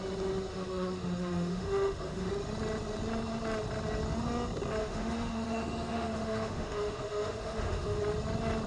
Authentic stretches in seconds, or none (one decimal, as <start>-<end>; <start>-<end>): 0.0-0.5; 2.3-4.8; 8.0-8.7